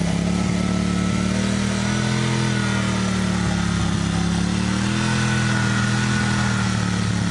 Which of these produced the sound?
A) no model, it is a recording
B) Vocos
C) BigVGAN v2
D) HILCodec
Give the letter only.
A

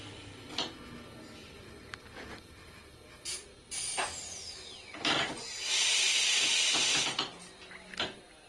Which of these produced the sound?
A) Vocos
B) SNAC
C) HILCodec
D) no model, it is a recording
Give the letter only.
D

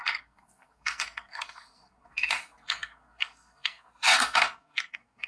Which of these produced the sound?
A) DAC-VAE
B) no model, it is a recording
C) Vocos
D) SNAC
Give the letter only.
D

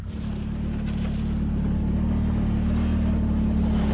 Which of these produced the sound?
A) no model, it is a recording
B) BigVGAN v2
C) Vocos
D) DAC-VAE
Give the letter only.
A